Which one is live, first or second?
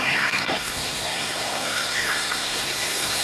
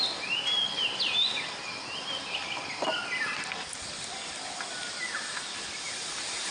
second